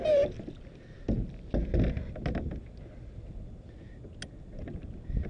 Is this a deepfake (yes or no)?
no